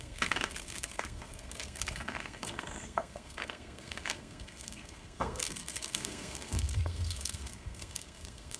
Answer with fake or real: fake